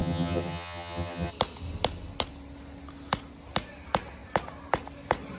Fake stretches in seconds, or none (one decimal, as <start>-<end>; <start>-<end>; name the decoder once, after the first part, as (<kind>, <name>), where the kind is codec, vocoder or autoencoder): 0.0-1.3 (vocoder, HiFi-GAN)